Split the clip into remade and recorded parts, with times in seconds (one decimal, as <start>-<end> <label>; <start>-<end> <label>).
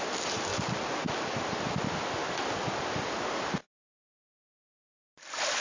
0.0-5.6 recorded